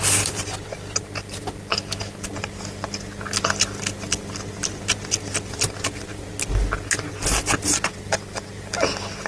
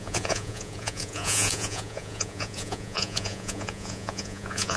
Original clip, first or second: first